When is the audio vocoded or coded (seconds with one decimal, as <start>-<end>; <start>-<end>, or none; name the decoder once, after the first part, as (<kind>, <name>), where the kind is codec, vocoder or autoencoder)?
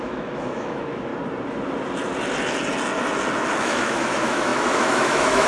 0.0-1.1 (autoencoder, DAC-VAE); 3.6-5.5